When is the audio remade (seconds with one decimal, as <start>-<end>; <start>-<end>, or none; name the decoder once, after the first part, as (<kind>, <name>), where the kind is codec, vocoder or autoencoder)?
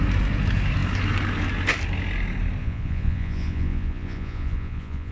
2.6-5.1 (vocoder, Vocos)